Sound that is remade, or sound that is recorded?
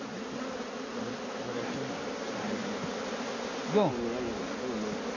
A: recorded